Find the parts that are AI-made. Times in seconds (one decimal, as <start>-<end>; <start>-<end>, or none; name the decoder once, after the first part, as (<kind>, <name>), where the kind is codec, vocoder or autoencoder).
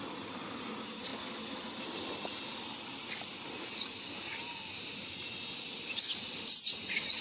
none